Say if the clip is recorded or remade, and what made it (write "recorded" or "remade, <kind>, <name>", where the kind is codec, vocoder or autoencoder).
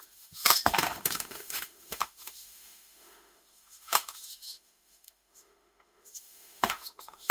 remade, autoencoder, DAC-VAE